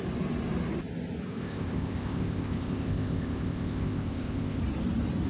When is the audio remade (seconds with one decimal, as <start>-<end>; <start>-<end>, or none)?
1.4-4.6